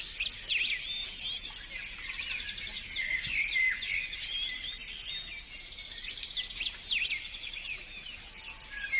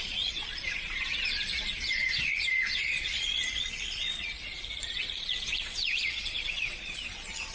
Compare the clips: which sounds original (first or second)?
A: first